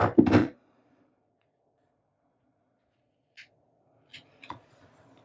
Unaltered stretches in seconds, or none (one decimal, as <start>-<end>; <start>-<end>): 0.0-0.4; 3.5-4.1; 4.7-5.2